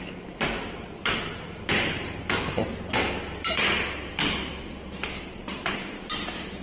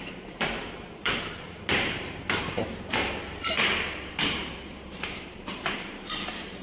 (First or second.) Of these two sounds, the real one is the first